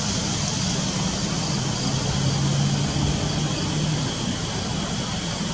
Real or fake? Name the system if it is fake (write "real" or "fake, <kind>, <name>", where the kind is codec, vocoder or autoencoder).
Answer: real